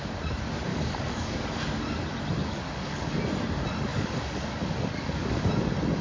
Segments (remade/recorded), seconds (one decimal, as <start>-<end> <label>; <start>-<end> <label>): 0.0-0.7 recorded; 0.7-1.4 remade; 1.4-2.4 recorded; 2.4-3.2 remade; 3.2-3.9 recorded; 3.9-5.4 remade; 5.4-6.0 recorded